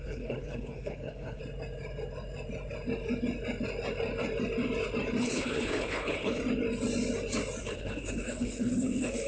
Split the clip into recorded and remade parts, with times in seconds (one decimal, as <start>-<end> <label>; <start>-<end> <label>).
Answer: 0.0-1.4 remade; 1.4-5.2 recorded; 5.2-6.4 remade; 6.4-7.6 recorded; 7.6-9.3 remade